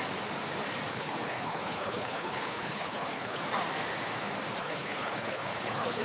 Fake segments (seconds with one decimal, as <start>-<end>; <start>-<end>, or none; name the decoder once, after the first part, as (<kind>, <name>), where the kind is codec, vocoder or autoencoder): 0.9-3.4 (codec, HILCodec); 4.6-6.0